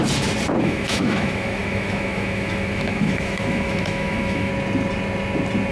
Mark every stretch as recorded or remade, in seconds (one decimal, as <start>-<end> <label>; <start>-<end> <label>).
0.0-0.6 recorded; 0.6-4.5 remade; 4.5-5.7 recorded